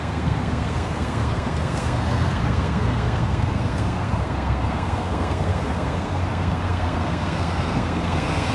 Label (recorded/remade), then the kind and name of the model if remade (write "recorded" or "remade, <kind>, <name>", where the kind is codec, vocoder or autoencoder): remade, codec, SNAC